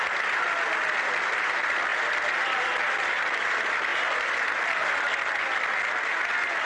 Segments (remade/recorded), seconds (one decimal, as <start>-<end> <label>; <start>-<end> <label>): 0.0-6.7 recorded